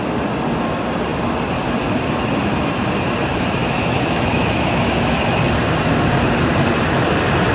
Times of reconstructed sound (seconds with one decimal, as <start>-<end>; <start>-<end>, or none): 3.6-5.3